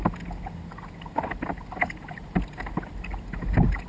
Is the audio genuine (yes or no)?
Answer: yes